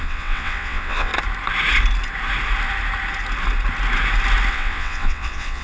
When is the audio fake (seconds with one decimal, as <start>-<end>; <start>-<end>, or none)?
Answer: 0.0-1.1; 4.5-5.6